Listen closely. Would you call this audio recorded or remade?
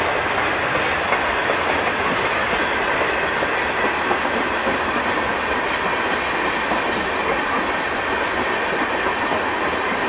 recorded